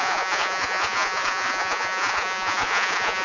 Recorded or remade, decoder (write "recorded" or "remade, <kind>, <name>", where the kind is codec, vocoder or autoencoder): remade, vocoder, Vocos